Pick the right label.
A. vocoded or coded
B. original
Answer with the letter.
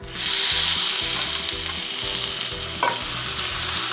B